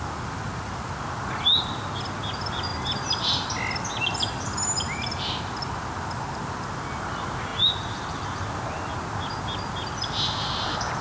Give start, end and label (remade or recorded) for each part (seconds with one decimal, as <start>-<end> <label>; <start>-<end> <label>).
0.0-11.0 recorded